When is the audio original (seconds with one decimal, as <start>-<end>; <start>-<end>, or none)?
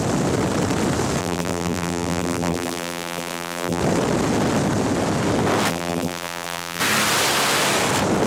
0.0-1.2; 3.8-5.7; 6.8-8.3